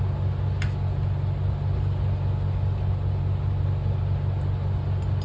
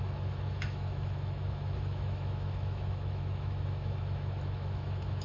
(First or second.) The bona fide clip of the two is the first